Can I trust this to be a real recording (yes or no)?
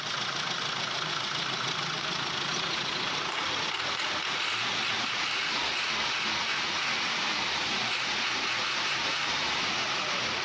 no